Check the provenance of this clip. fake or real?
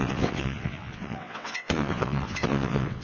fake